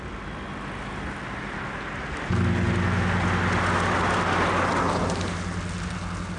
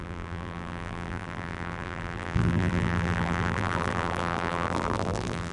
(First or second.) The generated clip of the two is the second